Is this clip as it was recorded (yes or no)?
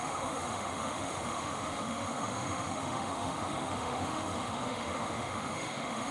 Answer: no